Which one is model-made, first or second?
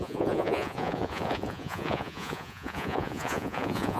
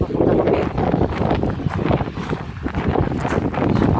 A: first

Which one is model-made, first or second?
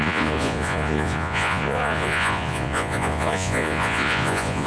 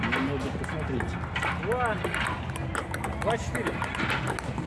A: first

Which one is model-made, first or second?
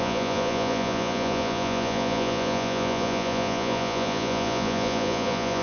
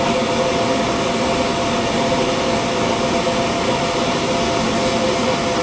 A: first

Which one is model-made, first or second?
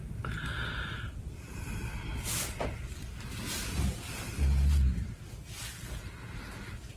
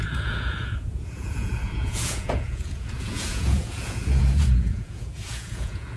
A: second